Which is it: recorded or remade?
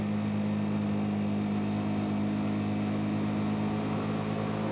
recorded